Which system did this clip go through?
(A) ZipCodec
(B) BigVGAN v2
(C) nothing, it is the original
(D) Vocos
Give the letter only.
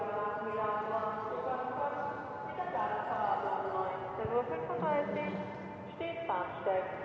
C